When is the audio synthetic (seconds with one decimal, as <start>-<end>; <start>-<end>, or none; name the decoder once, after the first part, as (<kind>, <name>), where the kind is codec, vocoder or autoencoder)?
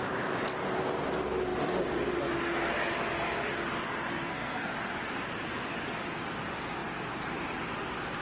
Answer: 4.1-4.7 (codec, SNAC)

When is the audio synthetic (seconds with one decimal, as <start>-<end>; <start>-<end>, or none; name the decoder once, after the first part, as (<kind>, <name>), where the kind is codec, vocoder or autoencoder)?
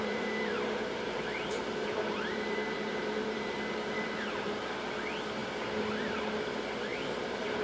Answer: 0.0-4.6 (vocoder, BigVGAN v2); 6.9-7.6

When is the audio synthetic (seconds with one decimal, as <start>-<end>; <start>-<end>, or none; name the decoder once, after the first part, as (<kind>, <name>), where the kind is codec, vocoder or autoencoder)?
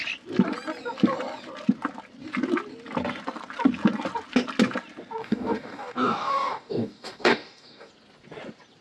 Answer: 5.2-7.9 (codec, DAC)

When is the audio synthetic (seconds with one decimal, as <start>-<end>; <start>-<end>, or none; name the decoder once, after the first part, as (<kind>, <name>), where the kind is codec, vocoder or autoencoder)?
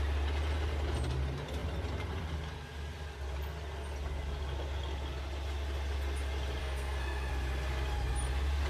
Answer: 6.6-7.3 (codec, SNAC)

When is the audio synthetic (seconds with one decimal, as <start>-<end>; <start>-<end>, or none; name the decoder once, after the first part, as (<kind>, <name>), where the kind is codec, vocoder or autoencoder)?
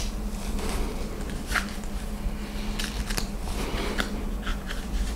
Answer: 4.5-5.2 (vocoder, BigVGAN v2)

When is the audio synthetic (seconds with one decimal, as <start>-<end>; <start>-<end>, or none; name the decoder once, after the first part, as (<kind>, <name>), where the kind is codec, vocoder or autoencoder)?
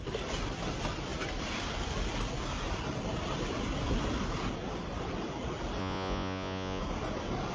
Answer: 5.8-6.8 (vocoder, Vocos)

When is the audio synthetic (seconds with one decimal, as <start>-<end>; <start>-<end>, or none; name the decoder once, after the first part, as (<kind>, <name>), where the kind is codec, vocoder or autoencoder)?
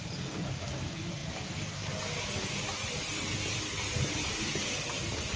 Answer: none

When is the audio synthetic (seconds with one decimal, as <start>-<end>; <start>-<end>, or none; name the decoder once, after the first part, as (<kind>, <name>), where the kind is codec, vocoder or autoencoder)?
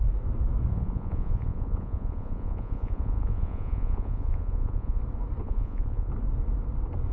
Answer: 0.7-5.0 (vocoder, Vocos); 5.4-6.1